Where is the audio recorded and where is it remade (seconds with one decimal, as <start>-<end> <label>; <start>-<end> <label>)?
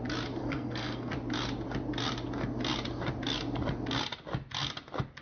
0.0-0.4 recorded; 0.4-1.1 remade; 1.1-5.2 recorded